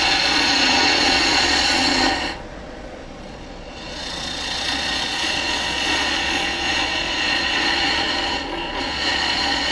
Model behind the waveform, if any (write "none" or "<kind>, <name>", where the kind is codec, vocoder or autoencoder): vocoder, Vocos